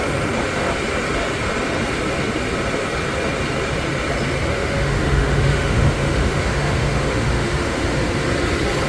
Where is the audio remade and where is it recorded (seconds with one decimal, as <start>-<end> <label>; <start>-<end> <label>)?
0.0-4.5 recorded; 4.5-8.3 remade; 8.3-8.9 recorded